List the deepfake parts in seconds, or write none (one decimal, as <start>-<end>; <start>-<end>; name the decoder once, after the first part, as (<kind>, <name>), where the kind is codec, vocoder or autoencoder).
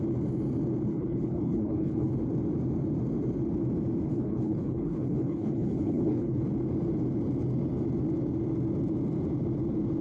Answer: 0.9-2.1 (codec, HILCodec); 4.1-6.4